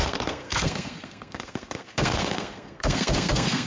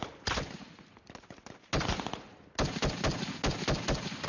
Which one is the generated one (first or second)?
first